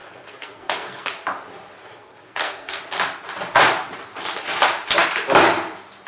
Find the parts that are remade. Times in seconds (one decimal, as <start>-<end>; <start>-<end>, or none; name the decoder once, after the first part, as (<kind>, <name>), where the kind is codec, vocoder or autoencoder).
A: 0.0-1.1 (codec, SNAC); 1.8-2.8